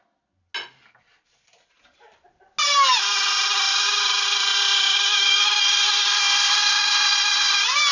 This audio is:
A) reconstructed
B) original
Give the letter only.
B